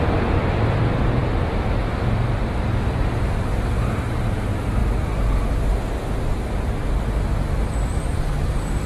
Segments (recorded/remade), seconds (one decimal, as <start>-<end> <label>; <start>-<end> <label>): 0.0-4.8 remade; 4.8-6.9 recorded; 6.9-8.9 remade